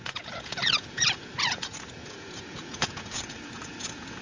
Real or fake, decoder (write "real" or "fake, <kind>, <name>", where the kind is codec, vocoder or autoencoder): fake, vocoder, Vocos